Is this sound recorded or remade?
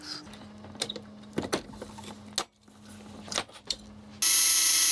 recorded